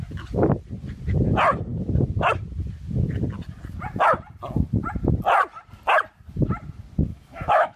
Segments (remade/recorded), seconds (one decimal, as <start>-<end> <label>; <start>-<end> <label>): 0.0-7.1 recorded; 7.1-7.8 remade